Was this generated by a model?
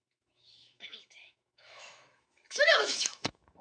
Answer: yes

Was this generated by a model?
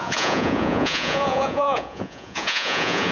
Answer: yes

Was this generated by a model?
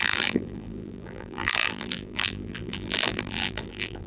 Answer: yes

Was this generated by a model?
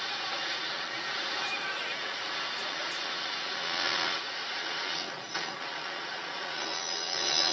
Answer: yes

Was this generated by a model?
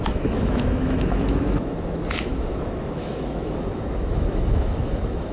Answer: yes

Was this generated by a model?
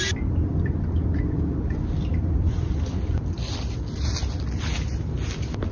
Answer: no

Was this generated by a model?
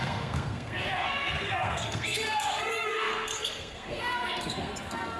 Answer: yes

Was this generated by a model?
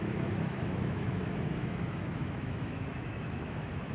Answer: yes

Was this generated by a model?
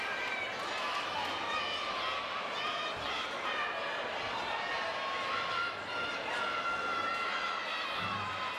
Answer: no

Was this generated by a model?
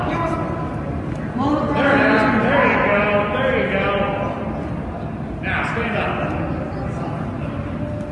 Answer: no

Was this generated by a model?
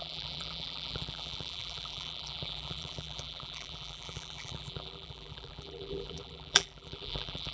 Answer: yes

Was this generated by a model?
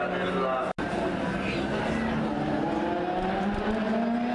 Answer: no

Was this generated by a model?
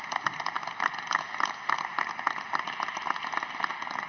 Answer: no